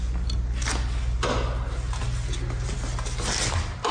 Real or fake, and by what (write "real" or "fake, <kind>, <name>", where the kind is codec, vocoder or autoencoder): real